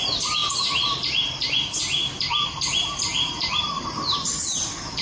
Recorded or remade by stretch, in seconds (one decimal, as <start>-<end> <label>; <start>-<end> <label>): 0.0-5.0 remade